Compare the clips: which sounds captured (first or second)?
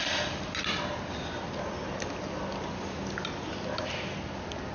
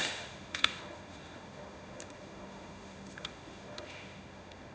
first